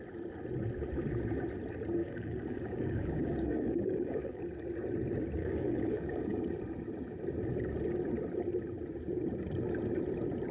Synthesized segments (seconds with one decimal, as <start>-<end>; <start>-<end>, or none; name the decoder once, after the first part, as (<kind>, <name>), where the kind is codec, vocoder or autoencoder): 2.0-4.4 (codec, DAC); 5.4-6.4